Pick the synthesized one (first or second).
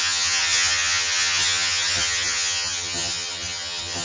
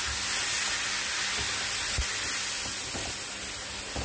first